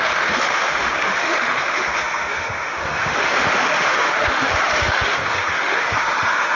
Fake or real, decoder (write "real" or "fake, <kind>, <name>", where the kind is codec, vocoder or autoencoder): fake, autoencoder, DAC-VAE